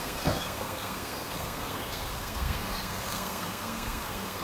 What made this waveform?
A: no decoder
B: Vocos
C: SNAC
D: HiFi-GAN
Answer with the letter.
C